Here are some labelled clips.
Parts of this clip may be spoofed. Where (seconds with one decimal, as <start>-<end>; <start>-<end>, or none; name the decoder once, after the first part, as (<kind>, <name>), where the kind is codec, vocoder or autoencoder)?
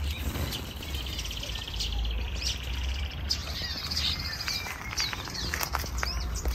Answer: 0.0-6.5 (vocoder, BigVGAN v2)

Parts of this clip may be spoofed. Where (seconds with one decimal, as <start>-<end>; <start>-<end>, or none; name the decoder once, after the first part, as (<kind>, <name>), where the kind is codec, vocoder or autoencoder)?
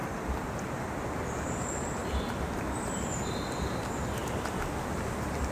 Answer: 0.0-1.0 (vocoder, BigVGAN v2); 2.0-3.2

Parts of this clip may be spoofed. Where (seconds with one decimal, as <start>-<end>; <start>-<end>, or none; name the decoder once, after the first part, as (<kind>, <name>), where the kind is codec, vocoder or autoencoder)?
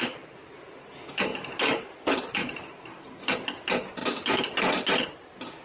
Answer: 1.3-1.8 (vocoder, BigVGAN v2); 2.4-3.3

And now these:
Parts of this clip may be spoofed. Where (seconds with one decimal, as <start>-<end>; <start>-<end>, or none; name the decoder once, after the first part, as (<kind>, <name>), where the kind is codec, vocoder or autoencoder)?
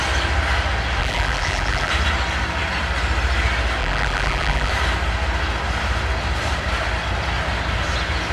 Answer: 1.0-1.9 (vocoder, BigVGAN v2); 3.8-4.7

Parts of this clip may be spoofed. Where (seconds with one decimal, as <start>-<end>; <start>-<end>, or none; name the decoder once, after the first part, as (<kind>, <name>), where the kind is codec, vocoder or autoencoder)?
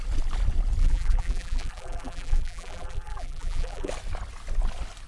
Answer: 0.8-3.9 (vocoder, BigVGAN v2)